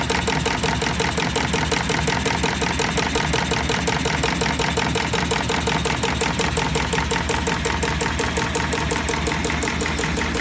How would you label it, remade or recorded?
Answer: recorded